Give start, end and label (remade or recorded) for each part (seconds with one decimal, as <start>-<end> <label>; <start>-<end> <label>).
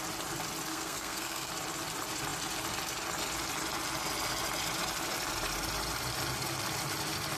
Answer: 0.0-0.7 recorded; 0.7-1.5 remade; 1.5-7.4 recorded